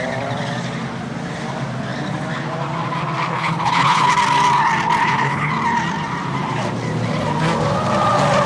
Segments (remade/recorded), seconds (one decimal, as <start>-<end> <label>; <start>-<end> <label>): 0.0-3.3 recorded; 3.3-4.1 remade; 4.1-5.0 recorded; 5.0-5.5 remade; 5.5-8.5 recorded